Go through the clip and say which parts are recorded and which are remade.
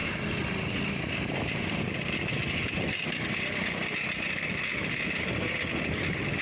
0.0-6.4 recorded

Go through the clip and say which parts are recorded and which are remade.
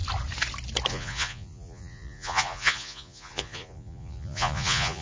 0.0-0.9 recorded; 0.9-5.0 remade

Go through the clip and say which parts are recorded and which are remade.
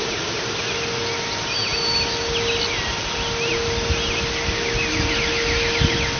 0.0-6.2 recorded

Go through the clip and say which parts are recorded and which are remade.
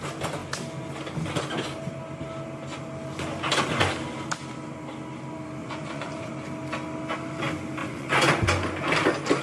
0.0-5.6 recorded; 5.6-6.3 remade; 6.3-7.8 recorded; 7.8-8.3 remade; 8.3-9.4 recorded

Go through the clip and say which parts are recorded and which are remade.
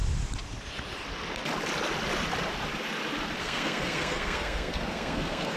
0.0-3.4 recorded; 3.4-5.6 remade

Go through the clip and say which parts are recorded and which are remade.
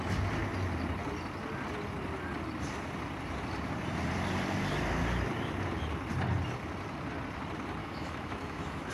0.0-7.8 recorded; 7.8-8.9 remade